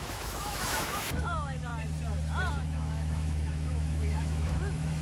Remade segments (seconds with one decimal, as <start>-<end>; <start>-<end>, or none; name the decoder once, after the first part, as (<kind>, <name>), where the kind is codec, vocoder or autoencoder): 0.0-1.7 (autoencoder, DAC-VAE); 2.5-5.0